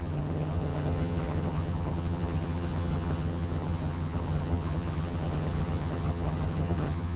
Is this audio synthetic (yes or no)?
yes